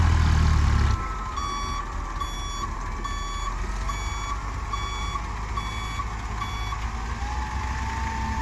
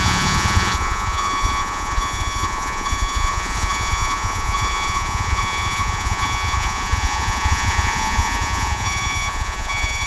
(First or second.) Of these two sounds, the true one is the first